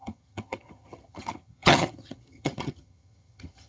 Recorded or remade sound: remade